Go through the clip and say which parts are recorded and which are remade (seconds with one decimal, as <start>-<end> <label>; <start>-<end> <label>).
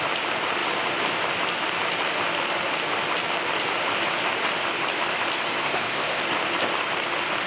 0.0-5.6 recorded; 5.6-6.2 remade; 6.2-7.5 recorded